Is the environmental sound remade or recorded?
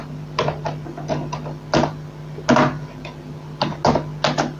recorded